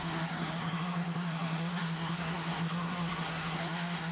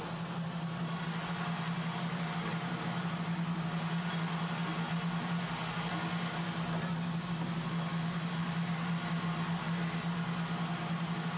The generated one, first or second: first